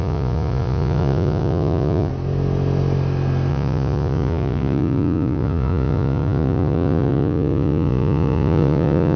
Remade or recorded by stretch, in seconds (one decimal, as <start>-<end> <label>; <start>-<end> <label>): 0.0-2.1 remade; 2.1-3.5 recorded; 3.5-9.2 remade